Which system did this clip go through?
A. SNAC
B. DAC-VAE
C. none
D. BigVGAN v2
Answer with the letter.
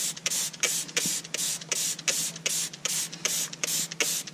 C